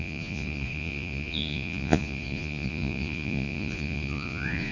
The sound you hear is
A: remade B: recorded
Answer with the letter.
A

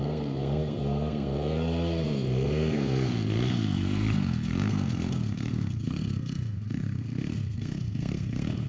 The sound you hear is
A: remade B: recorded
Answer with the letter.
A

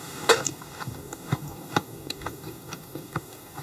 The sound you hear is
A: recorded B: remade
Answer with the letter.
B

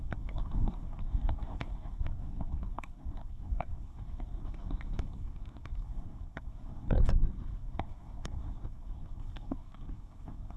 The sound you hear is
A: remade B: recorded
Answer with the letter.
A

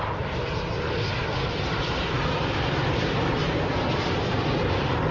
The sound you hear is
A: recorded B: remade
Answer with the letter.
B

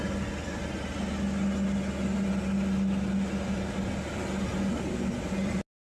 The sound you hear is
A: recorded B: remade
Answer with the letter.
A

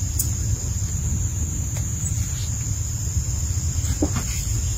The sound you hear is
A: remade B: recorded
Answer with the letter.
B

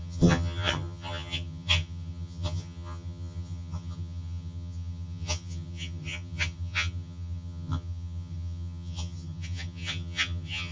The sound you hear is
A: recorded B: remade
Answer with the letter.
B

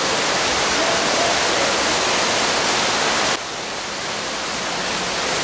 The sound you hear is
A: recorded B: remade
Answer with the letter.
A